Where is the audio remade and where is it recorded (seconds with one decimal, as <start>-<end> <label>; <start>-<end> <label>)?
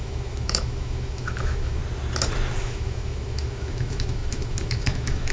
0.0-1.8 remade; 1.8-2.6 recorded; 2.6-5.3 remade